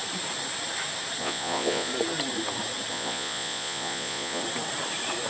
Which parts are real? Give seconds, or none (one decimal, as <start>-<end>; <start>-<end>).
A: 0.0-1.2; 1.9-2.9; 4.4-5.3